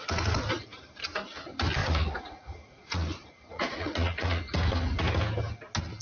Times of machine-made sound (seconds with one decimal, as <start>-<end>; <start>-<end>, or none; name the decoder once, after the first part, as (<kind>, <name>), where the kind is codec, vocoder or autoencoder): 1.8-4.4 (vocoder, Vocos)